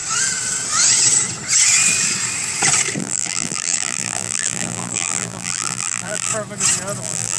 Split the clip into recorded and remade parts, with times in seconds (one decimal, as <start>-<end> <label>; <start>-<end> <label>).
0.0-3.0 recorded; 3.0-6.3 remade; 6.3-7.0 recorded; 7.0-7.4 remade